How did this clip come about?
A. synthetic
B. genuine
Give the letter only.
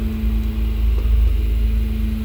B